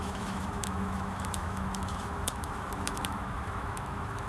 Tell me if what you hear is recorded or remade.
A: remade